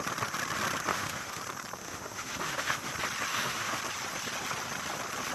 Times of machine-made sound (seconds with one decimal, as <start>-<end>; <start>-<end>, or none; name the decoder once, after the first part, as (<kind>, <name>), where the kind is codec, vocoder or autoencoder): 0.9-1.4 (autoencoder, DAC-VAE); 1.8-2.9; 3.3-3.8